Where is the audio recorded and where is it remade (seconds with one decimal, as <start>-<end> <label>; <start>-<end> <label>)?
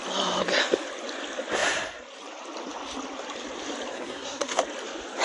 0.0-3.9 recorded; 3.9-4.6 remade; 4.6-5.2 recorded